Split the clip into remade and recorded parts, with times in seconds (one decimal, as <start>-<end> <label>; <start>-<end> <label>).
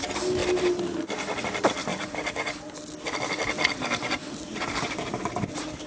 0.0-1.9 recorded; 1.9-2.7 remade; 2.7-4.2 recorded; 4.2-5.9 remade